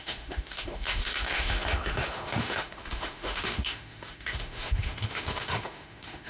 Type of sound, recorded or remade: remade